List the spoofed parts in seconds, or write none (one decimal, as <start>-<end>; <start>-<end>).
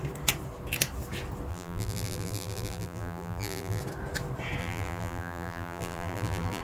1.5-3.8; 4.6-6.6